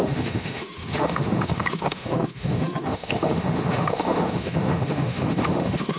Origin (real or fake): fake